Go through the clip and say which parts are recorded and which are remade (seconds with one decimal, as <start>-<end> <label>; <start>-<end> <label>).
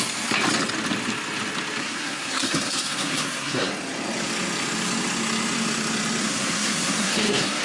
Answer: 0.0-1.8 recorded; 1.8-3.7 remade; 3.7-6.2 recorded; 6.2-7.6 remade